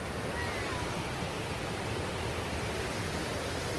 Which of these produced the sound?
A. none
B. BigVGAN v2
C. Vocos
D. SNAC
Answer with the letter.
A